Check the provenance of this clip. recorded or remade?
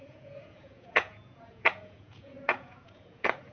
remade